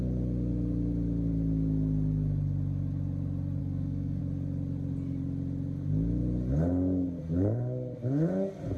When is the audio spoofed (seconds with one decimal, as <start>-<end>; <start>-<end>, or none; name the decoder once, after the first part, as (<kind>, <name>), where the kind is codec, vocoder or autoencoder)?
3.6-4.2 (codec, SNAC)